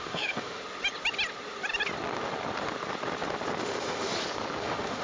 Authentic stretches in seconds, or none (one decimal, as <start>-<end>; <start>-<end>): 0.6-3.6; 4.1-4.6